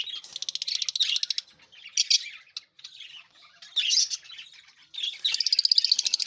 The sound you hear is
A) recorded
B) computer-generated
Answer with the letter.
A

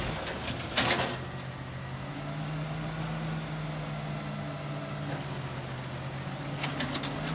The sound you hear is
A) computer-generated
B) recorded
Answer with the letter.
B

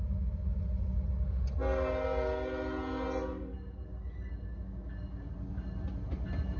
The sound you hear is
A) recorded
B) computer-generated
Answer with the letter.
A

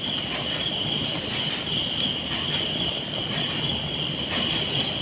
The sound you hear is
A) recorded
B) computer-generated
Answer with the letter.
A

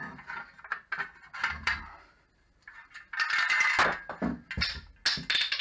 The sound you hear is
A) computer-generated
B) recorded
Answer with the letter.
B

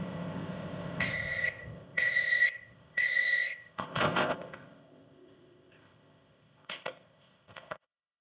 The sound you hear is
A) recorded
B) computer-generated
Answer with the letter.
B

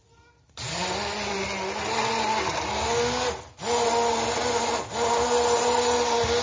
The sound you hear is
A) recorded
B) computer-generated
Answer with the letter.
A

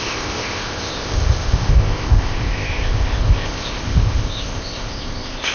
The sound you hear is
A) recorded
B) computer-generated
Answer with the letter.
B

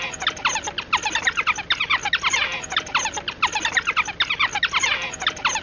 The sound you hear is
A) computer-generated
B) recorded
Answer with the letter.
B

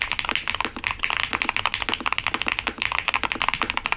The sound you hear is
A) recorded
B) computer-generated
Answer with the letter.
A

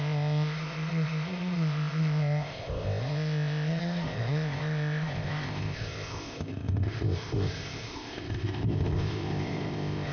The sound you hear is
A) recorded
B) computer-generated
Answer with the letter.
B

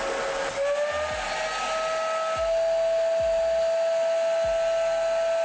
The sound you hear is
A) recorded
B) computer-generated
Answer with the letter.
A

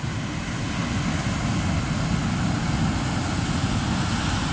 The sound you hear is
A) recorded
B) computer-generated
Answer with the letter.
A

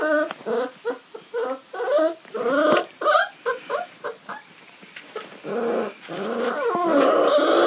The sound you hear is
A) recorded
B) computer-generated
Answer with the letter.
A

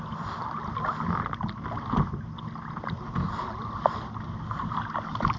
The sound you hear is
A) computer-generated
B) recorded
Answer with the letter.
B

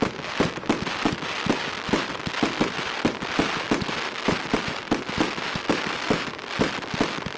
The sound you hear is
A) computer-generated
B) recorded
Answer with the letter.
B